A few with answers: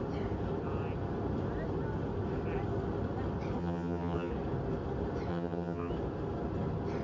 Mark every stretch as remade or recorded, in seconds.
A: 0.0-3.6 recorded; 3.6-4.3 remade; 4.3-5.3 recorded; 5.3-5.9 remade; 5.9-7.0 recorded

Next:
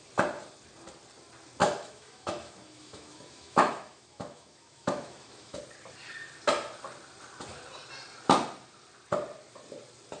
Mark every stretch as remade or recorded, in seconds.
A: 0.0-1.6 recorded; 1.6-5.6 remade; 5.6-10.2 recorded